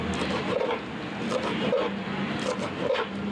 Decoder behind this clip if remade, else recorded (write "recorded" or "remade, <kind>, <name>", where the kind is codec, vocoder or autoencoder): recorded